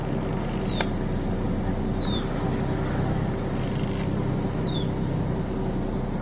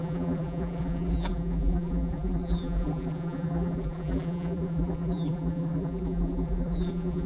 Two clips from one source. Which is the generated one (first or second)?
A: second